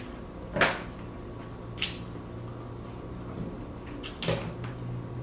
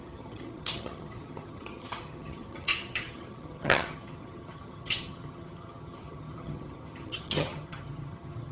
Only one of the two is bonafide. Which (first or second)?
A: first